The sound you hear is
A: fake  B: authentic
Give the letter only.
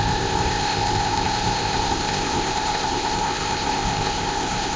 A